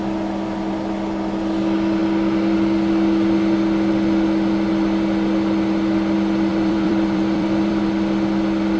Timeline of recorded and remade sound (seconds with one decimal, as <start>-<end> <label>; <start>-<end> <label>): 0.0-6.5 recorded; 6.5-7.8 remade; 7.8-8.8 recorded